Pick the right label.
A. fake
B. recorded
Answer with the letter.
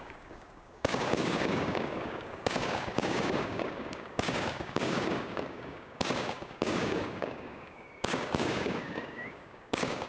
A